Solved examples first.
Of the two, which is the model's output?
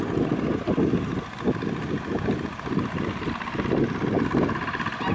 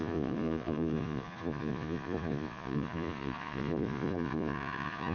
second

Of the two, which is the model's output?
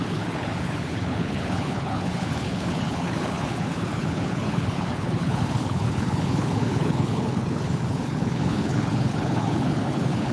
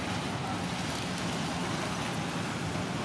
first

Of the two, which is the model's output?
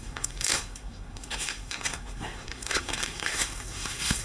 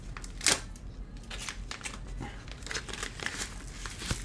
first